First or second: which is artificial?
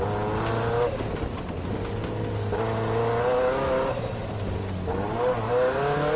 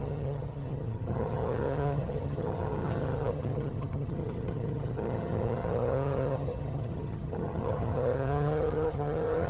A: second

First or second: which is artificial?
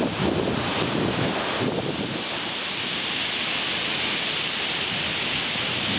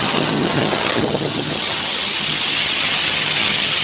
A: second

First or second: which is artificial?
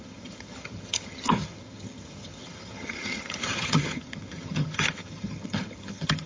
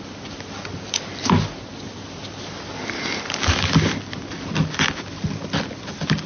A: first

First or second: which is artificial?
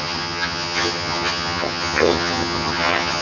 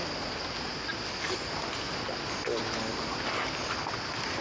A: first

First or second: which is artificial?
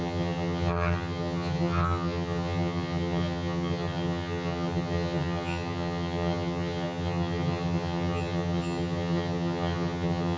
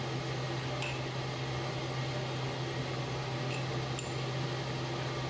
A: first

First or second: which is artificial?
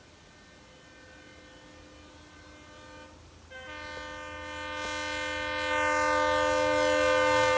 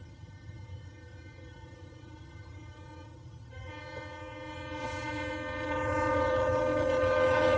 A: second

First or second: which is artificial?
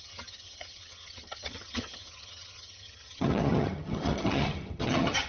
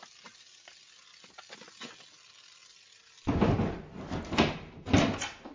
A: first